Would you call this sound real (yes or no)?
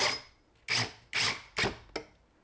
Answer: yes